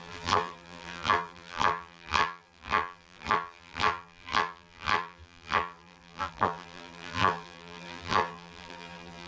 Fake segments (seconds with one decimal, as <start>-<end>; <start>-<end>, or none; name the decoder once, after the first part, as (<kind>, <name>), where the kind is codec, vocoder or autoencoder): 0.0-9.3 (vocoder, BigVGAN v2)